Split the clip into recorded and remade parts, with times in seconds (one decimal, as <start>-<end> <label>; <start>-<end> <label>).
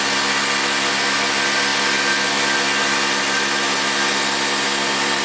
0.0-5.2 recorded